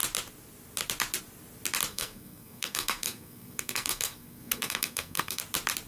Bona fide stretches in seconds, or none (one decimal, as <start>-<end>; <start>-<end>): 0.0-1.9; 5.4-5.9